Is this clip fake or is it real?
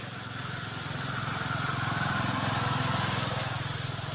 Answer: real